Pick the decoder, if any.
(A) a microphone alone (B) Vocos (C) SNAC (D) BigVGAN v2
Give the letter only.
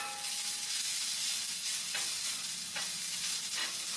A